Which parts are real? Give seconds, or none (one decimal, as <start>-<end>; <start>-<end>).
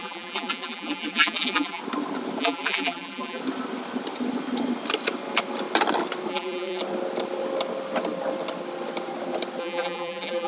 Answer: 1.8-2.4; 3.4-6.3; 6.8-9.6